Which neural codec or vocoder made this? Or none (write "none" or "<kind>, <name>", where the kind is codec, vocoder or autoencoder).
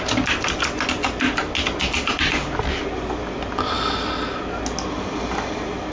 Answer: none